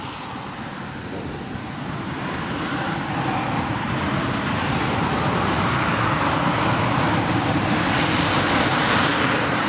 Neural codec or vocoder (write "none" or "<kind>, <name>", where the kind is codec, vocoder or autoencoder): none